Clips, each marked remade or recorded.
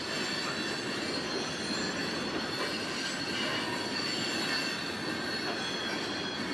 recorded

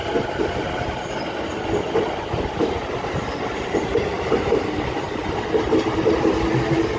recorded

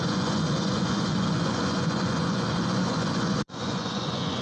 remade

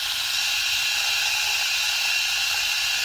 recorded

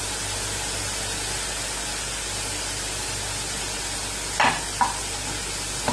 recorded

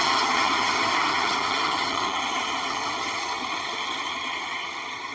remade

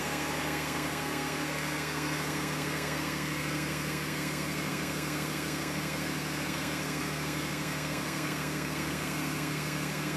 remade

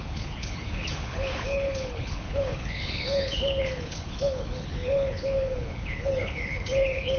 remade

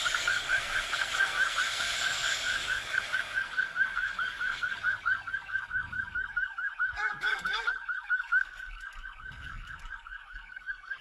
remade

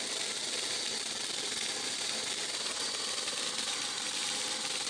remade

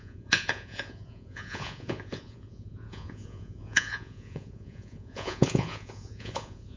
remade